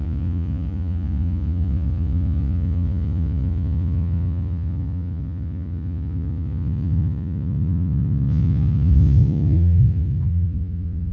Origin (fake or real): fake